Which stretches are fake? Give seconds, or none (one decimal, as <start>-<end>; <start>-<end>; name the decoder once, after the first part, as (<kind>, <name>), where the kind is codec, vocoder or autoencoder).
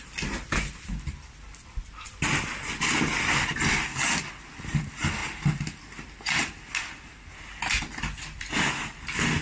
none